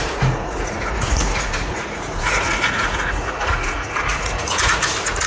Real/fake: fake